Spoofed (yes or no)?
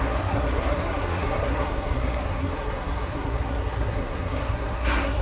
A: yes